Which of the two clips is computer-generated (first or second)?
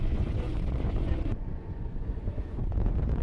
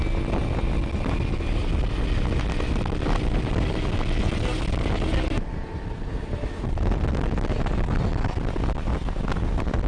first